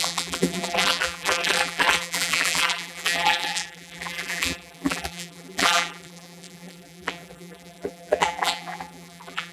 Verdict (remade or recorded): remade